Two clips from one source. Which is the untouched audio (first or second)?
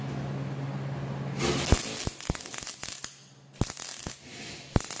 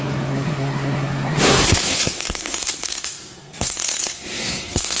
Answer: first